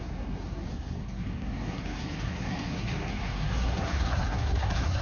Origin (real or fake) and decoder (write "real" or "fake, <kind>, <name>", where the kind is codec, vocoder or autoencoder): fake, codec, SNAC